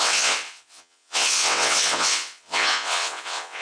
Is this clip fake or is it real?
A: fake